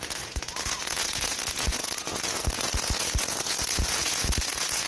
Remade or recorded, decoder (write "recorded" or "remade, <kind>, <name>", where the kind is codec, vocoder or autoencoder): remade, vocoder, Vocos